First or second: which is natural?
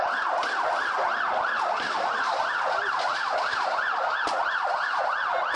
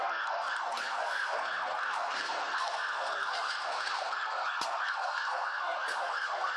first